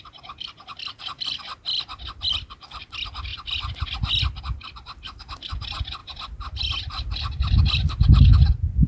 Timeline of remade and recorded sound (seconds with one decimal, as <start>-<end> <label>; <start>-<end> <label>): 0.0-3.3 remade; 3.3-4.4 recorded; 4.4-6.0 remade; 6.0-8.5 recorded; 8.5-8.9 remade